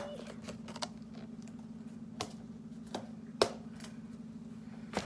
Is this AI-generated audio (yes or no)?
no